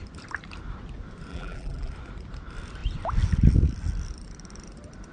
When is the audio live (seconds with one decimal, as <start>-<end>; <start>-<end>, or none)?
0.0-1.3; 1.9-5.1